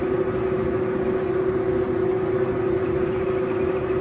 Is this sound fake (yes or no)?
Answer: no